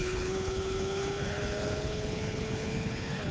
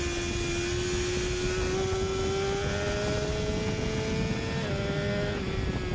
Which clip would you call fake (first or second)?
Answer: first